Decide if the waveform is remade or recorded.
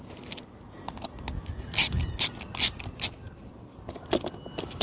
recorded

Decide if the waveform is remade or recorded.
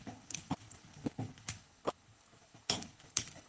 remade